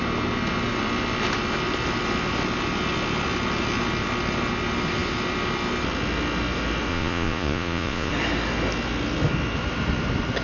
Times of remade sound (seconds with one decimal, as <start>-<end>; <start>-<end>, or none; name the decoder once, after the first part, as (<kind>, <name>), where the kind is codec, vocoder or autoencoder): 6.9-8.1 (vocoder, Vocos)

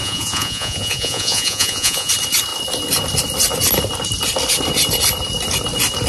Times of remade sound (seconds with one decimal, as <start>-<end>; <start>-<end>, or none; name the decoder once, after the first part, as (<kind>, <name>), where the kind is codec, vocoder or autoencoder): 0.0-2.1 (vocoder, Vocos)